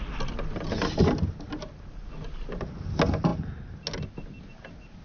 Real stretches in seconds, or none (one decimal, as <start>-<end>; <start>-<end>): 0.0-5.0